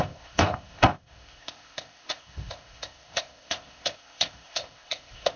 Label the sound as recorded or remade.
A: remade